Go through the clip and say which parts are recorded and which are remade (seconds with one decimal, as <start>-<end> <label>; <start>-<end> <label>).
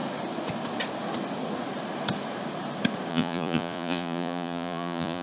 0.0-3.1 recorded; 3.1-5.2 remade